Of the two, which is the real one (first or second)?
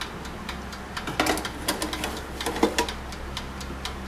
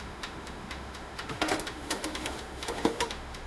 first